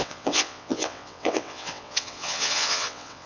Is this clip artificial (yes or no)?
yes